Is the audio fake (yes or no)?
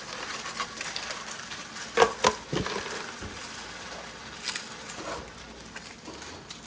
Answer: no